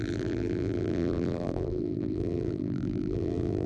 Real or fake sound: fake